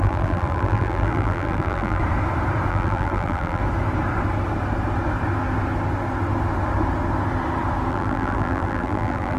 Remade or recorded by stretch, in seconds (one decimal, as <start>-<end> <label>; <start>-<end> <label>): 0.0-2.0 remade; 2.0-2.7 recorded; 2.7-3.6 remade; 3.6-7.9 recorded; 7.9-9.4 remade